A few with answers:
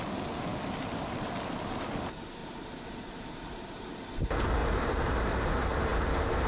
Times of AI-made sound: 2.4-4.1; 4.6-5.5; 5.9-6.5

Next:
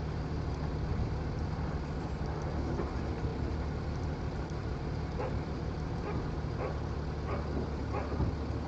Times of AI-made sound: 0.9-2.1; 3.3-6.3

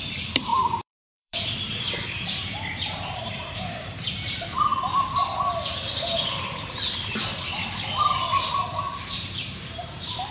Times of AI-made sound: 0.0-4.7; 9.0-10.3

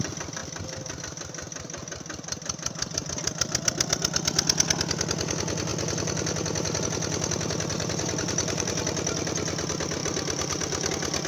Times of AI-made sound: 7.7-8.8; 10.0-10.9

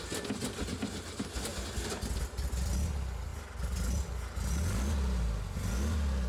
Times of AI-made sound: none

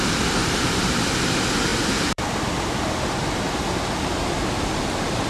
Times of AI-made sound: 0.4-1.0; 1.7-3.4

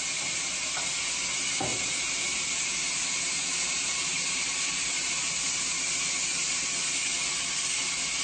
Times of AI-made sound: 1.7-5.8

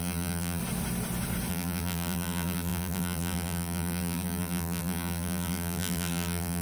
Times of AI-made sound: 0.0-0.6; 1.5-6.6